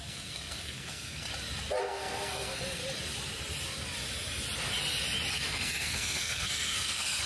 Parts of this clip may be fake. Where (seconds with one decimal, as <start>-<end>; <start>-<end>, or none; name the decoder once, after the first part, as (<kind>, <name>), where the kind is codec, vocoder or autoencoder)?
0.0-1.3 (codec, SNAC); 1.8-2.8; 5.3-7.3